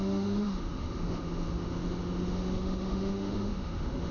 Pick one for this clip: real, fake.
fake